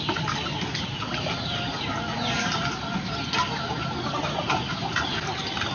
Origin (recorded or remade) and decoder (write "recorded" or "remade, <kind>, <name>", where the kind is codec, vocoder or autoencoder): recorded